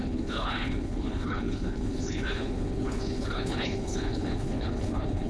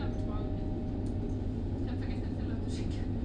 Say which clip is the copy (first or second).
first